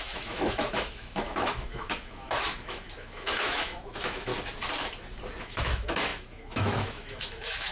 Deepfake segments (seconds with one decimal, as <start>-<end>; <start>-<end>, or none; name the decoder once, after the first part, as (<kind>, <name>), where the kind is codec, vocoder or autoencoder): 0.0-4.3 (autoencoder, DAC-VAE); 5.4-7.7